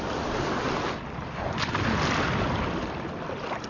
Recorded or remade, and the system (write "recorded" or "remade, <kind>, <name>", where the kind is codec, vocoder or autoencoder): recorded